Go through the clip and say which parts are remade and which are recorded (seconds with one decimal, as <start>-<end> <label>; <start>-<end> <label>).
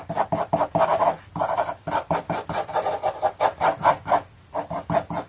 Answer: 0.0-5.3 recorded